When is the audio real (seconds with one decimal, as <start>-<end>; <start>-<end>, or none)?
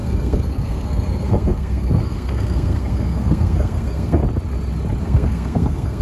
4.2-5.0